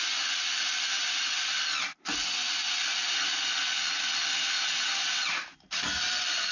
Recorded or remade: recorded